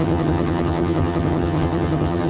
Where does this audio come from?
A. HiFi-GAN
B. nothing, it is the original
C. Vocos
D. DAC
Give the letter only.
A